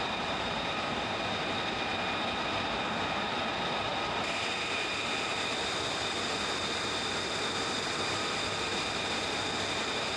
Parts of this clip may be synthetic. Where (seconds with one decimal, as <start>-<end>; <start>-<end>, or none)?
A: none